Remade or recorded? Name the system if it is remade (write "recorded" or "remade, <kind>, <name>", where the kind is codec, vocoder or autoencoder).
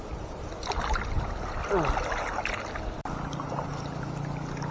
recorded